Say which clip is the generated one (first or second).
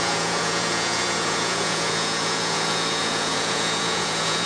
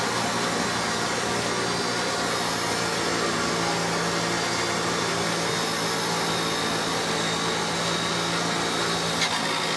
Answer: first